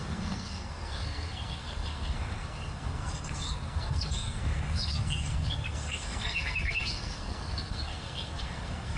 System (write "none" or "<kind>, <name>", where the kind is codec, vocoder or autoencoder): codec, SNAC